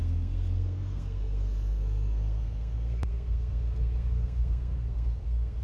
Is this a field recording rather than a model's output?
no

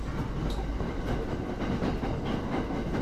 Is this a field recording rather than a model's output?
yes